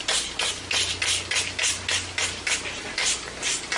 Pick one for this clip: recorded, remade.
recorded